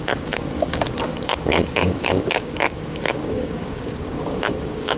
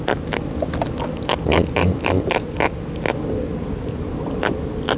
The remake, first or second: first